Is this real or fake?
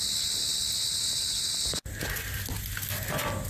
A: real